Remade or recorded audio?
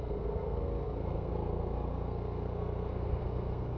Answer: remade